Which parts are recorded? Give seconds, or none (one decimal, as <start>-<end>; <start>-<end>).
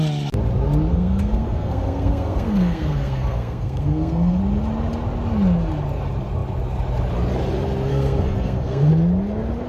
0.0-0.9; 4.4-7.9; 8.9-9.7